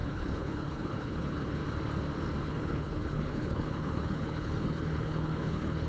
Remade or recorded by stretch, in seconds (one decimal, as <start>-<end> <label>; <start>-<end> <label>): 0.0-1.6 remade; 1.6-2.4 recorded; 2.4-5.9 remade